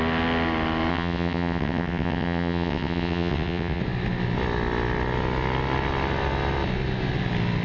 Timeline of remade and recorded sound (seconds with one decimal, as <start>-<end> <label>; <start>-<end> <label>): 0.0-0.9 recorded; 0.9-3.8 remade; 3.8-7.6 recorded